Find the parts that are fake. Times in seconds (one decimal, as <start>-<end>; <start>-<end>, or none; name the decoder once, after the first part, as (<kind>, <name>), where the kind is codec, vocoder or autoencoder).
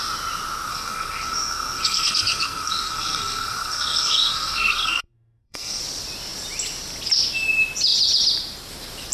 0.7-5.8 (codec, SNAC)